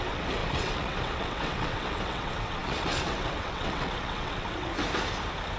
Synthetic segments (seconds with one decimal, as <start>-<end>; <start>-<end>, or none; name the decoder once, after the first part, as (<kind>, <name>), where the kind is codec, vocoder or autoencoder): 0.0-4.7 (vocoder, WaveNeXt)